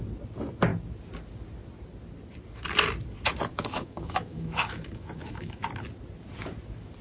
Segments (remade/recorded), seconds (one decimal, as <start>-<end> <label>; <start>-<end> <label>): 0.0-3.5 recorded; 3.5-5.6 remade; 5.6-7.0 recorded